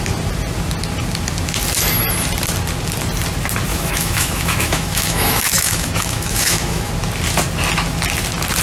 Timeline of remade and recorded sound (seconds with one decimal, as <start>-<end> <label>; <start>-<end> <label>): 0.0-3.7 recorded; 3.7-6.9 remade; 6.9-8.6 recorded